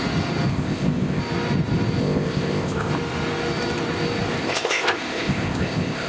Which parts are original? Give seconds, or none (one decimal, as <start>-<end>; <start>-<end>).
0.0-0.5; 1.2-2.0; 2.9-4.4